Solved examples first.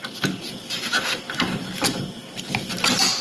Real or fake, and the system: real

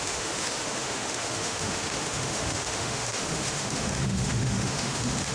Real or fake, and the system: fake, autoencoder, DAC-VAE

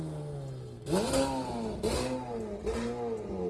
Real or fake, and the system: real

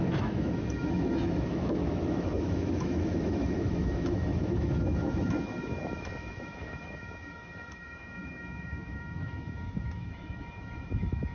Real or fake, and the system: fake, autoencoder, DAC-VAE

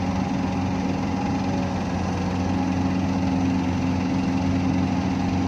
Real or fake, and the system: real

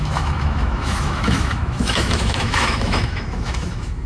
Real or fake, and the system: fake, autoencoder, DAC-VAE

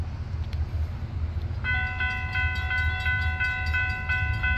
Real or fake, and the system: real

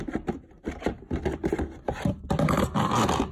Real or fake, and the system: real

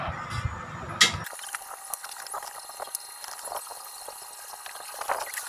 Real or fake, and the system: real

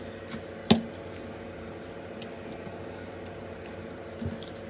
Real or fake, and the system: real